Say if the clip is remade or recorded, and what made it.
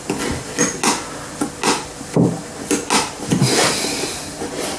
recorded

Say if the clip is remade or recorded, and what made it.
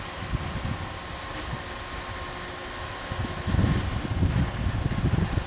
recorded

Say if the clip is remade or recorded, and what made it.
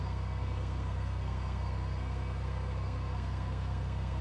remade, codec, SNAC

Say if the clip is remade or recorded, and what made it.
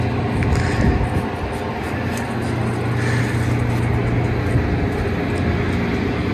recorded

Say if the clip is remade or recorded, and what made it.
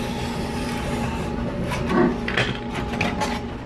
recorded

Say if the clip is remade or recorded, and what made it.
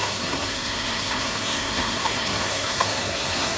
remade, codec, SNAC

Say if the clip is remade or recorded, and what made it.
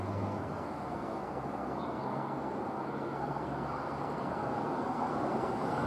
remade, codec, SNAC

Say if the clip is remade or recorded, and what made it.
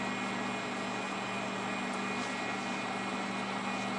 recorded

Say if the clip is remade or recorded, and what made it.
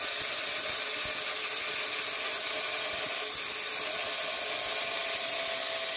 recorded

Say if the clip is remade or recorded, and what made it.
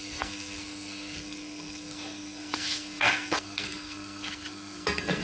remade, codec, SNAC